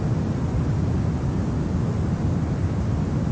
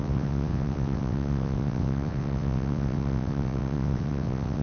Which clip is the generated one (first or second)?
second